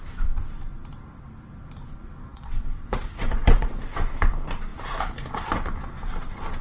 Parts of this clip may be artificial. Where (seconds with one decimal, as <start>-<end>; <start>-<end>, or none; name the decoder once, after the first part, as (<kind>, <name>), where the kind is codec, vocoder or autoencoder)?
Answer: 2.3-3.8 (vocoder, WaveNeXt)